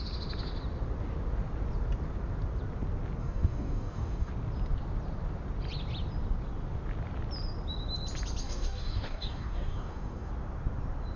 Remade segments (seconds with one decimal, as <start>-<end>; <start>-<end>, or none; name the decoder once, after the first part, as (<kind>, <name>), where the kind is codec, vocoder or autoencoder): 3.2-4.3 (codec, DAC); 8.4-10.3